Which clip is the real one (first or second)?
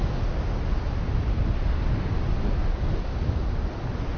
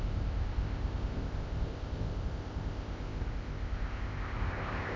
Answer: first